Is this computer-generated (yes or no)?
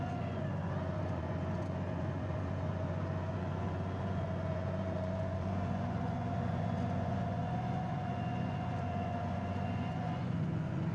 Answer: yes